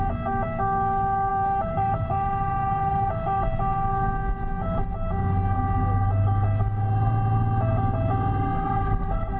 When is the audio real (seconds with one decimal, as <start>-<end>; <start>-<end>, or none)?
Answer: 0.0-1.3; 3.1-9.4

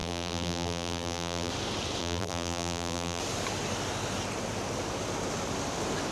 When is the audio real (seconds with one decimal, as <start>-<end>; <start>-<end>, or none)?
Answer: 1.5-2.0; 3.2-6.1

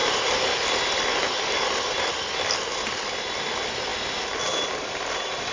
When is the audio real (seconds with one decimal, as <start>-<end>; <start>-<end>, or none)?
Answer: 3.2-3.9; 4.4-5.5

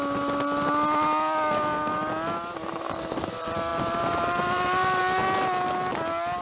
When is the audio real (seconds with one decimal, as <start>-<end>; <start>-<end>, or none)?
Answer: 0.0-3.7; 5.0-6.4

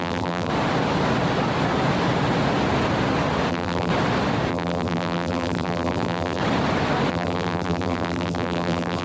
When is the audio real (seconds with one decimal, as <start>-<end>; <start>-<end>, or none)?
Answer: 0.5-3.5; 3.9-4.5; 6.4-7.1

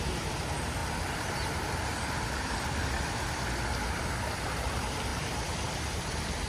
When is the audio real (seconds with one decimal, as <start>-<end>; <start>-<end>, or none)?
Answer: 0.0-5.1

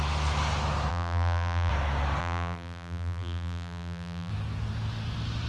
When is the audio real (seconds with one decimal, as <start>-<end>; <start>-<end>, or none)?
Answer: 0.0-0.9; 1.7-2.2; 4.3-5.5

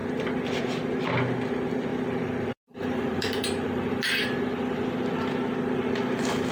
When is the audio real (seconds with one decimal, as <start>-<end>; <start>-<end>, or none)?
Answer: 0.6-1.9; 5.5-6.5